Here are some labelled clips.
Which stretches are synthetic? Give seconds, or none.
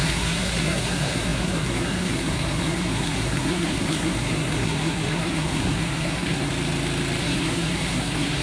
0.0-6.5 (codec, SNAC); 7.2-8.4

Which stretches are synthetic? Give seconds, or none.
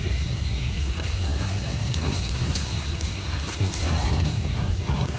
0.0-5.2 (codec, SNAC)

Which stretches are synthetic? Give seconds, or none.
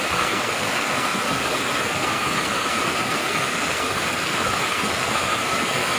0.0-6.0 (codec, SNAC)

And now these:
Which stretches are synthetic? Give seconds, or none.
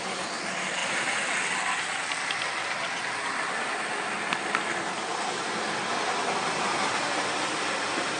none